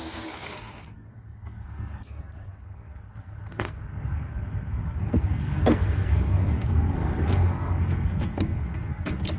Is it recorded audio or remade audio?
remade